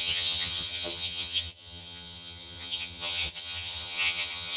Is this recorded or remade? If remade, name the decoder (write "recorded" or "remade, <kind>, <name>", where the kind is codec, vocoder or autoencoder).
remade, vocoder, HiFi-GAN